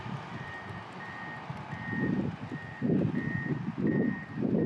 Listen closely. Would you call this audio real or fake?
real